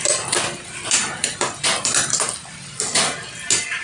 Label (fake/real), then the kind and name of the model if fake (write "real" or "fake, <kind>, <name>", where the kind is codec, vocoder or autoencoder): real